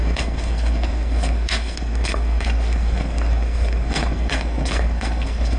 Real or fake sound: fake